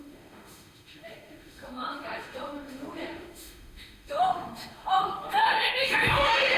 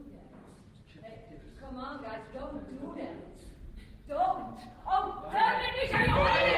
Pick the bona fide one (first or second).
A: second